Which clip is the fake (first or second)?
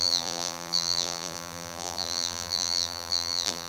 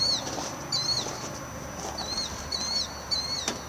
first